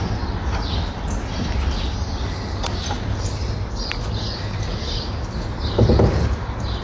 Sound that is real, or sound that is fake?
real